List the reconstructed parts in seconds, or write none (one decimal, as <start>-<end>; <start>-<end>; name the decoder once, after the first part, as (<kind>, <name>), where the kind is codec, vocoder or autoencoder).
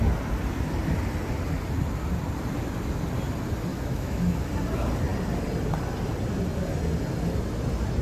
3.7-4.5 (autoencoder, DAC-VAE)